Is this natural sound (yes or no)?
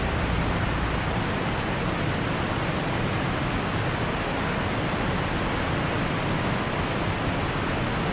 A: yes